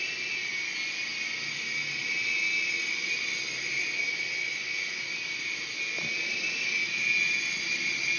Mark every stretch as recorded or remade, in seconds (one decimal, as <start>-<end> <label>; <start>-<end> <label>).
0.0-8.2 recorded